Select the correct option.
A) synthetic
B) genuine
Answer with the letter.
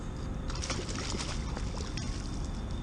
B